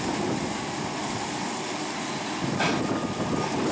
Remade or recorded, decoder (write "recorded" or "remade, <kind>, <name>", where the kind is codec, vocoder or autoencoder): recorded